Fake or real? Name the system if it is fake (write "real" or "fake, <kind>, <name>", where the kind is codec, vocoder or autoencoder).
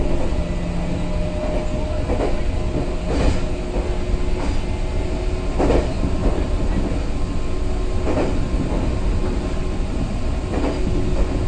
real